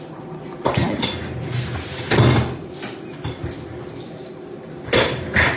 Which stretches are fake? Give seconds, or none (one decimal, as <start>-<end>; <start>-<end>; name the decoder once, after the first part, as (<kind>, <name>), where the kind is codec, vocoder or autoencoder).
none